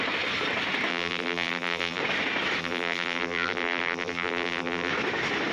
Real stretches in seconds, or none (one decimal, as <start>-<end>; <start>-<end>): 0.0-0.9; 2.0-2.6; 4.9-5.5